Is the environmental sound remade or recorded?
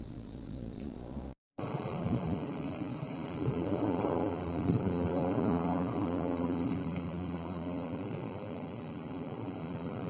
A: remade